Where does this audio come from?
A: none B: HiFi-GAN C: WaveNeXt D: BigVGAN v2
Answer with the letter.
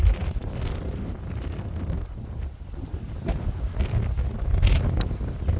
A